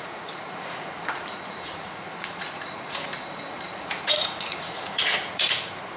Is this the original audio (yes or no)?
no